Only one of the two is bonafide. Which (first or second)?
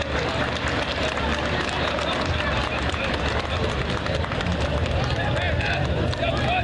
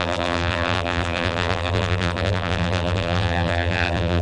first